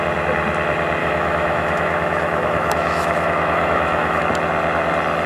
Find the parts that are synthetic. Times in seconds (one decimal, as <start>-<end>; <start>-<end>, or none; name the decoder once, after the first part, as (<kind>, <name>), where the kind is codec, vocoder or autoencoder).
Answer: 1.0-4.2 (autoencoder, DAC-VAE)